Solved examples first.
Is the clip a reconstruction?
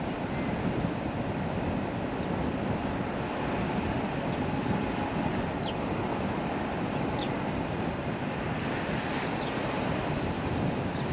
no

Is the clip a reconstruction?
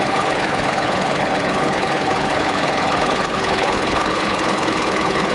yes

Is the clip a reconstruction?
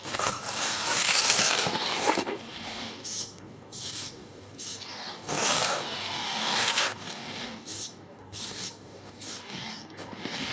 yes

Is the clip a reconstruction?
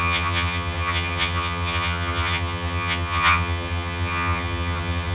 yes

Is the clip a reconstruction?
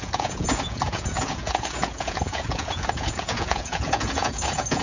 yes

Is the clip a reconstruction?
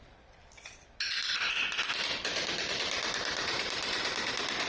no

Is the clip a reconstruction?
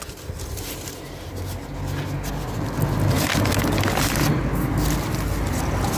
no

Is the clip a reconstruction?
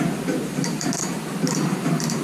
no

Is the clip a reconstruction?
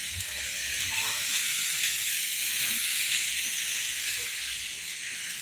yes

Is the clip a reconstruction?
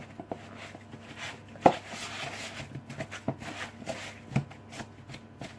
no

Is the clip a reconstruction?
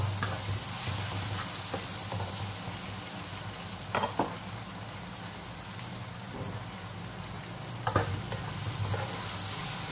no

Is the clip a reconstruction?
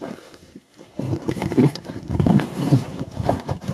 yes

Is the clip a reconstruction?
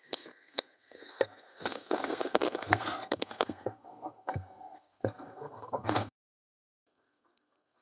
yes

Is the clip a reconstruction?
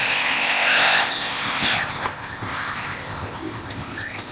yes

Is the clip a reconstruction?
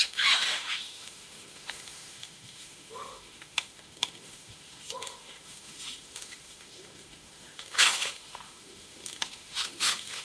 yes